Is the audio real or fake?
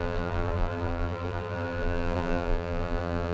fake